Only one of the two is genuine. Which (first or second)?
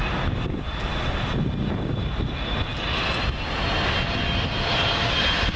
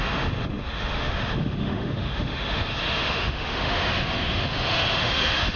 first